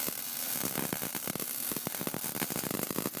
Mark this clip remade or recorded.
recorded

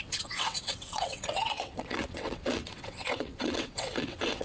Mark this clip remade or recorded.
remade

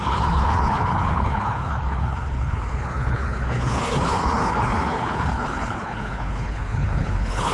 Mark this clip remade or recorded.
remade